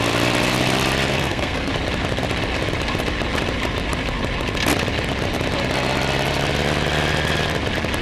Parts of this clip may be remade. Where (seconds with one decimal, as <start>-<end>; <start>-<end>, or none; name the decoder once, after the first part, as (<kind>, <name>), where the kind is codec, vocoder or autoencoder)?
1.1-1.7 (codec, SNAC)